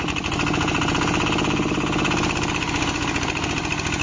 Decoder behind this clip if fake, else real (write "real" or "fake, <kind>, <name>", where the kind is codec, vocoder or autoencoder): real